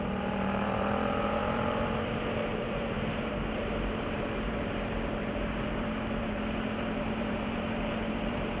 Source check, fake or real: fake